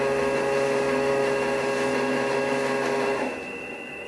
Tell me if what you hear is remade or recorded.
recorded